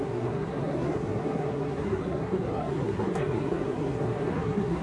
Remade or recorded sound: remade